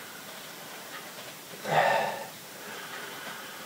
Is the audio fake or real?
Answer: fake